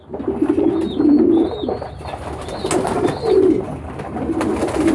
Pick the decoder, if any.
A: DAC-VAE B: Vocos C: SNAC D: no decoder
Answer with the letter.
D